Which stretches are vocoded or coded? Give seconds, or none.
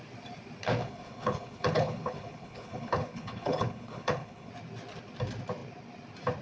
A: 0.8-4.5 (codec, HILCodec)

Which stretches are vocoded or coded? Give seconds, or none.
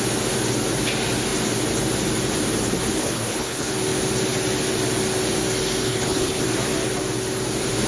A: 3.0-3.7 (codec, HILCodec); 5.8-6.4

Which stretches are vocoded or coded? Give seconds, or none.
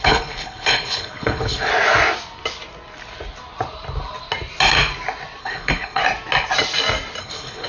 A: 0.0-1.7 (codec, HILCodec); 5.4-6.0; 7.2-7.7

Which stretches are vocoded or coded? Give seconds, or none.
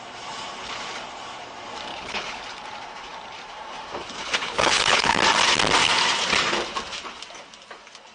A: 1.9-2.4 (codec, HILCodec); 4.2-5.2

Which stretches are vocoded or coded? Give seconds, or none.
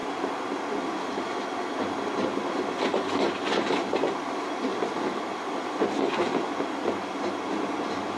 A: none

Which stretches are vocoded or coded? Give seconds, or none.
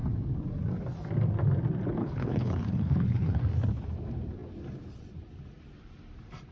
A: 2.0-3.4 (codec, HILCodec)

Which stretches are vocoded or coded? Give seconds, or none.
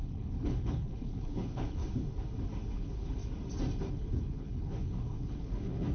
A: 0.0-1.8 (codec, HILCodec); 2.7-3.2; 3.9-5.9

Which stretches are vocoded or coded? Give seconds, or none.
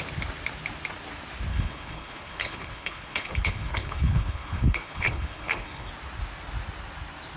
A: 1.5-5.9 (codec, HILCodec)